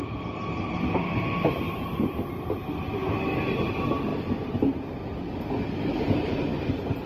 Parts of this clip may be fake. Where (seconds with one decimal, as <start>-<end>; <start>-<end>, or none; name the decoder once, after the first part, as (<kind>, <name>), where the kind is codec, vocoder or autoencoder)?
none